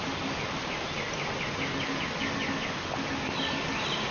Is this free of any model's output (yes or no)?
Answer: yes